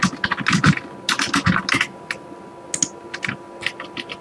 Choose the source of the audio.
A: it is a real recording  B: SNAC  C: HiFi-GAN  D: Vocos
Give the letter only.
A